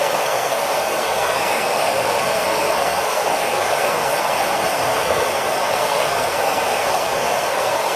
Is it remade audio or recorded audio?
remade